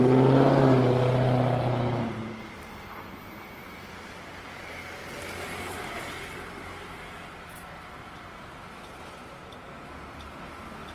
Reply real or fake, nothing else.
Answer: real